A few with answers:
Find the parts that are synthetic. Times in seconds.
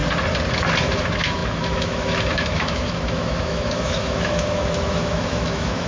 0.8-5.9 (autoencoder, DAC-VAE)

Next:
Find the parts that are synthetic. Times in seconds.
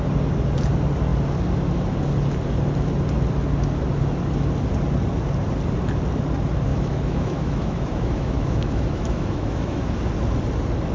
6.7-10.0 (autoencoder, DAC-VAE)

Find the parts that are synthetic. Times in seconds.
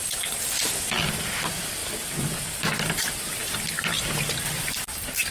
none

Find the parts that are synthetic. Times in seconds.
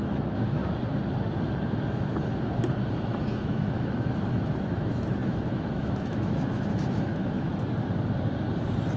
0.0-0.6 (autoencoder, DAC-VAE); 2.9-7.5